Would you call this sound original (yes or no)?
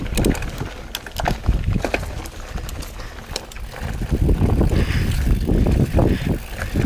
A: yes